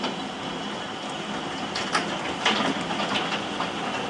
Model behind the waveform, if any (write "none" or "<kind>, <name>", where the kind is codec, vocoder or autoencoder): none